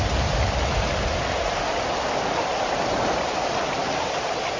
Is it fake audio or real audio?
real